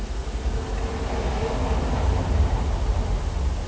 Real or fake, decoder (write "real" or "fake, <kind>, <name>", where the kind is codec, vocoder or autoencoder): real